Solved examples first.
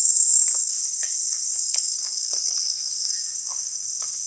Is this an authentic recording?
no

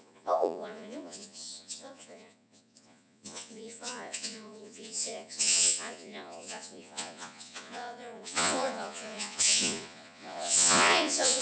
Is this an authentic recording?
no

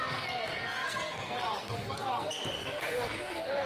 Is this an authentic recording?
no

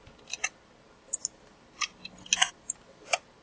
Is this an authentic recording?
yes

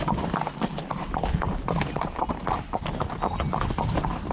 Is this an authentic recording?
yes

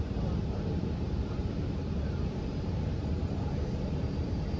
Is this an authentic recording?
no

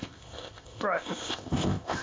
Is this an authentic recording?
no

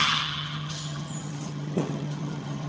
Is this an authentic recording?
no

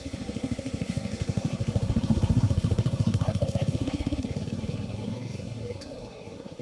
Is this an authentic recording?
no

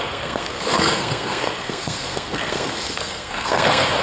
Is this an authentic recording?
no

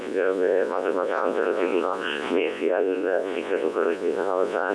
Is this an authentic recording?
no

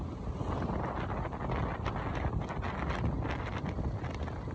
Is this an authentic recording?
yes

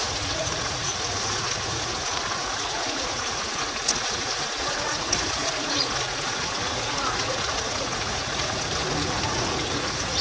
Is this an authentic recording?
no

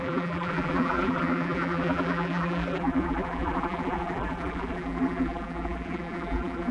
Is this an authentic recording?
no